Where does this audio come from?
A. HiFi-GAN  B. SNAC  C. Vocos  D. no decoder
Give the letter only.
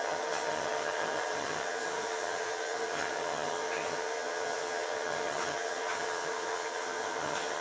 A